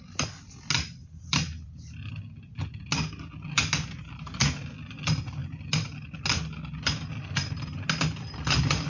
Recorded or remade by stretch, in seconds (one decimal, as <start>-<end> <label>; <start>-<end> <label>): 0.0-1.0 recorded; 1.0-2.1 remade; 2.1-8.9 recorded